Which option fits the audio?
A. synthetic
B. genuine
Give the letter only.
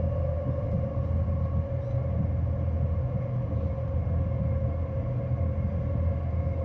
B